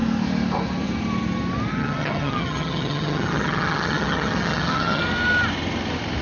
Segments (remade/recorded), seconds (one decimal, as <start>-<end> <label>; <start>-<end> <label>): 0.0-1.7 recorded; 1.7-5.0 remade; 5.0-6.2 recorded